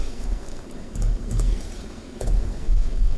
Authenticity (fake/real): fake